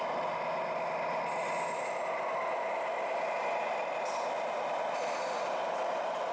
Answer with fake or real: real